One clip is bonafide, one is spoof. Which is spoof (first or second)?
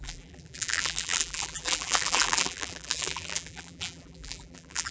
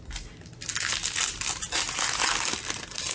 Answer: first